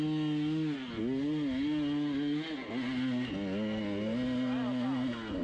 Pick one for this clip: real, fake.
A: real